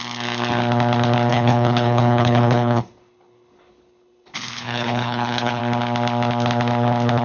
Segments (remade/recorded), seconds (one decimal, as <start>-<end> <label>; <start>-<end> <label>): 0.0-1.3 recorded; 1.3-5.6 remade; 5.6-7.2 recorded